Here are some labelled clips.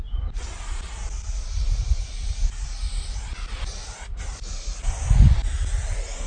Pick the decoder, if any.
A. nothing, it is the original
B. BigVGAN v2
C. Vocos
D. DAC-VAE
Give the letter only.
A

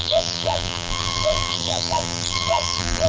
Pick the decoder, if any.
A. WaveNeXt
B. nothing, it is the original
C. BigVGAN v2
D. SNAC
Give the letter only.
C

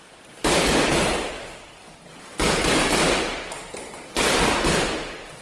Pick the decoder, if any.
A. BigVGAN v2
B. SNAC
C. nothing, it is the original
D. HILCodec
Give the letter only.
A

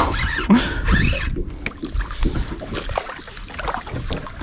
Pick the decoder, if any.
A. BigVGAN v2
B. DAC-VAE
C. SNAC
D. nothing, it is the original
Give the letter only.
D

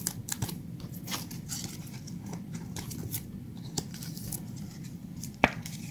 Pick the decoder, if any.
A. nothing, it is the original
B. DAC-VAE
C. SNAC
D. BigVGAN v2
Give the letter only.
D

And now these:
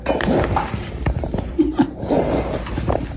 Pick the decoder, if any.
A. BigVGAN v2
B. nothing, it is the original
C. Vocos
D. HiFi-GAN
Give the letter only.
A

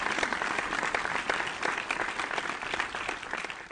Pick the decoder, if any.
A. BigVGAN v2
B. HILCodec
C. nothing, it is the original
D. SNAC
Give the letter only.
A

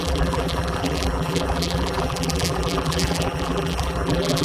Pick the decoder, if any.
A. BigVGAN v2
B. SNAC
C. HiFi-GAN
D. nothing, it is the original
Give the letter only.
A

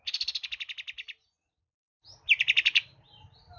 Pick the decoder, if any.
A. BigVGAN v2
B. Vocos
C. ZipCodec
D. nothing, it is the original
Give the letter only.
D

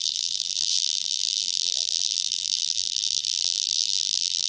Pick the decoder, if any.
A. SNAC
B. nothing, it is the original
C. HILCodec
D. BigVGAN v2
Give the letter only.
D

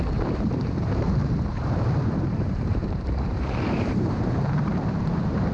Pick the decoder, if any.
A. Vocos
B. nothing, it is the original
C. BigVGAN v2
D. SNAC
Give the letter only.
C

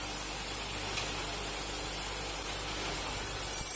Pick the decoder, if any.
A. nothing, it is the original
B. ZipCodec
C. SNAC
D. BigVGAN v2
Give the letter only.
A